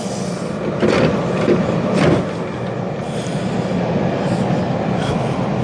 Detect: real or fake real